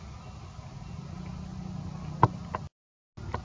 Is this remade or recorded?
recorded